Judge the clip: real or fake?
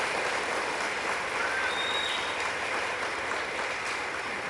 real